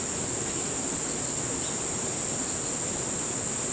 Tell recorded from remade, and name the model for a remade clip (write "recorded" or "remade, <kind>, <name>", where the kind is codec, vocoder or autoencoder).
recorded